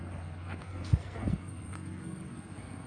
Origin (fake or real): fake